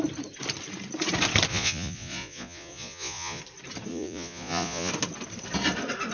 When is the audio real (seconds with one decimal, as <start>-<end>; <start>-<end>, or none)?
0.0-1.5; 3.4-3.9; 4.9-6.1